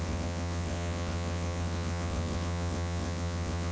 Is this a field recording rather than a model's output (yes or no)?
no